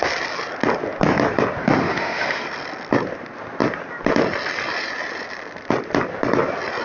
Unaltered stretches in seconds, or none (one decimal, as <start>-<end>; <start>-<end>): 0.0-1.8; 2.4-6.8